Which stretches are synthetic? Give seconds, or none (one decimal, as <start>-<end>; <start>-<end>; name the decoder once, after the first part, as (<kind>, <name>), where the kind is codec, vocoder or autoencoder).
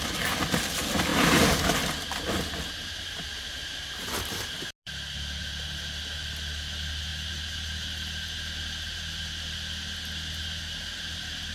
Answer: none